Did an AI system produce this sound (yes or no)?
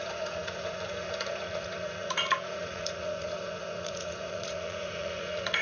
yes